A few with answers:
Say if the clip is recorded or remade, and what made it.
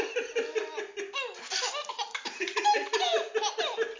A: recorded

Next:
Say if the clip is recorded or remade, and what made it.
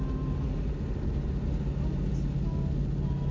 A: recorded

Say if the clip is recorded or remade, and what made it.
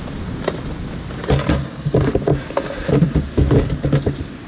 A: recorded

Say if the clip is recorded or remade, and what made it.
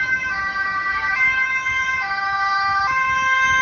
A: remade, autoencoder, DAC-VAE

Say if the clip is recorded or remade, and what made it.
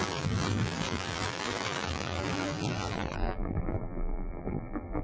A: remade, vocoder, BigVGAN v2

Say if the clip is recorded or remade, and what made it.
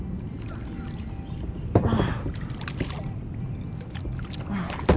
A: recorded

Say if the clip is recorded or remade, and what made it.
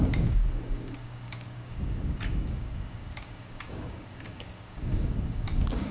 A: remade, codec, DAC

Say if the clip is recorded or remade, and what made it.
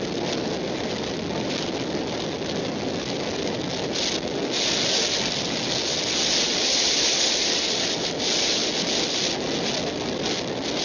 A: recorded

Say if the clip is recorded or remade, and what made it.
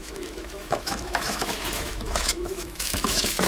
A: remade, autoencoder, DAC-VAE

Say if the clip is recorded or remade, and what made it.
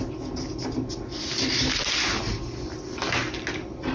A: recorded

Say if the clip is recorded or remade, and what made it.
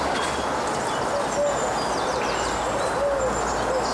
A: recorded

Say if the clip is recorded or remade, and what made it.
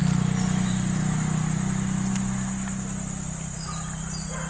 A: recorded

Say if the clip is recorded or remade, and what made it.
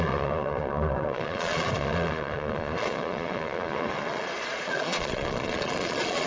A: remade, vocoder, Vocos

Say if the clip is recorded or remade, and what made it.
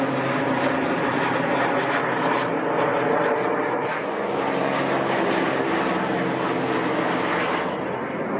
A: recorded